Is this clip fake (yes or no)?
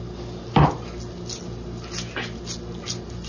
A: no